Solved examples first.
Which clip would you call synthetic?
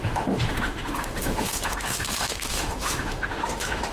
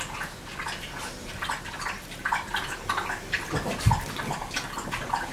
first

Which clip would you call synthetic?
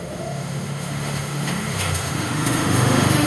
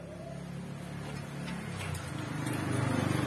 first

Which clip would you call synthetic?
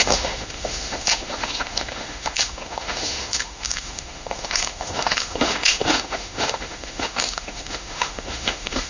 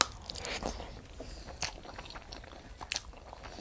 first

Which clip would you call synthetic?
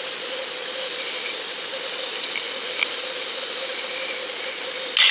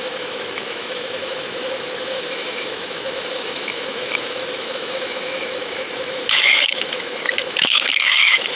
second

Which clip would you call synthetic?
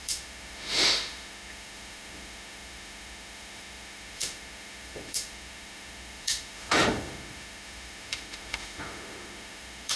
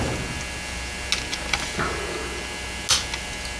first